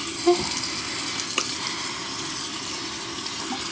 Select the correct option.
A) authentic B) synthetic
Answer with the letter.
A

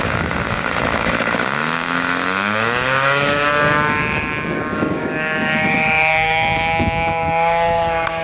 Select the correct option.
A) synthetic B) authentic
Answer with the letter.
A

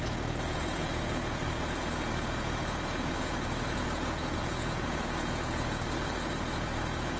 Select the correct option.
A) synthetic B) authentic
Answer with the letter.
A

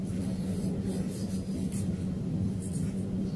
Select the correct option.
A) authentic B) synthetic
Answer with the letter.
A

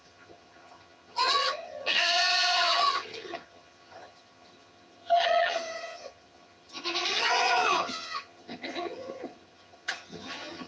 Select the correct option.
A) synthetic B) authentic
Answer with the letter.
A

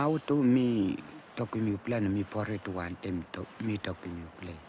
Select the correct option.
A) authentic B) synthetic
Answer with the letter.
A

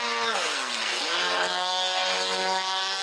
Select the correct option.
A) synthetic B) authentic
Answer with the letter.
A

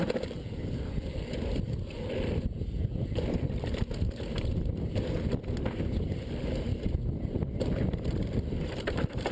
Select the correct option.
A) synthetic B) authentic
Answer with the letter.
A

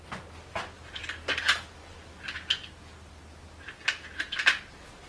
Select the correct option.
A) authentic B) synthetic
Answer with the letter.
A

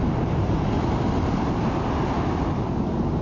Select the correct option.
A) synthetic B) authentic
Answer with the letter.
B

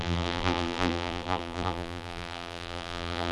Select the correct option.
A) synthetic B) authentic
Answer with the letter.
A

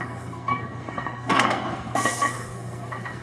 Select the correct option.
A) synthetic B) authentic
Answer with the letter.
A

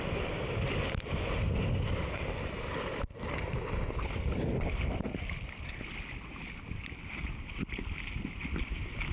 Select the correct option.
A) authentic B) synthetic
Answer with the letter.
A